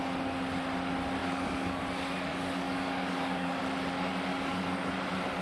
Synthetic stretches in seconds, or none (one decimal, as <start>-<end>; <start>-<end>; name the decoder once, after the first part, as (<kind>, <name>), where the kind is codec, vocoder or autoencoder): 1.2-1.8 (codec, DAC); 2.3-3.6; 4.3-4.9